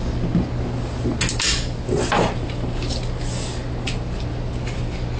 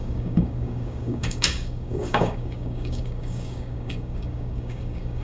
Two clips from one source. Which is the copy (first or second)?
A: second